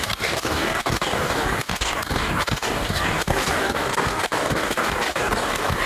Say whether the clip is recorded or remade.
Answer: remade